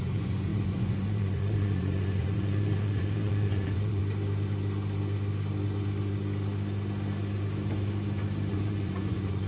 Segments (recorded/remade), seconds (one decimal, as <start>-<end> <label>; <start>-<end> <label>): 0.0-4.0 remade; 4.0-8.5 recorded; 8.5-9.5 remade